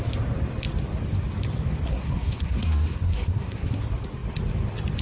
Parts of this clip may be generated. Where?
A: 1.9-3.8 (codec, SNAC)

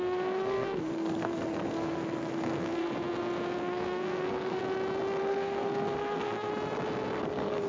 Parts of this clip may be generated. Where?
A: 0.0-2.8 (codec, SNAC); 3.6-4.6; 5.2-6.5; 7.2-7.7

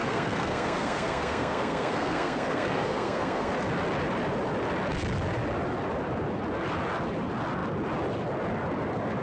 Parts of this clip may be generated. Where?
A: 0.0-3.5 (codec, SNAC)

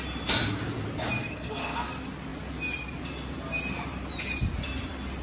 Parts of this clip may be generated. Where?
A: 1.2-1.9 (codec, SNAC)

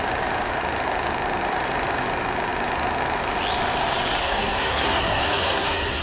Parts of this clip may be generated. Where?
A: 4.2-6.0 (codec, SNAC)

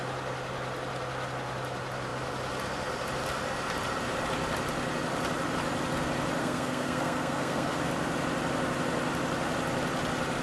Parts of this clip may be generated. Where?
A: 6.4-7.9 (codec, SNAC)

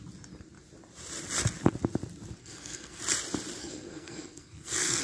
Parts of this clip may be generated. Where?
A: 2.4-3.0 (codec, SNAC); 3.6-5.0

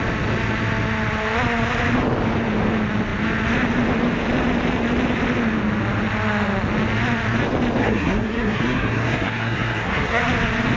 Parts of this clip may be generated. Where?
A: 7.8-10.2 (codec, SNAC)